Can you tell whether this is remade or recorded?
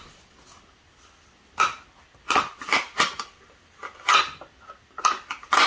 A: recorded